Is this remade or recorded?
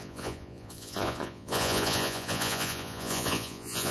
remade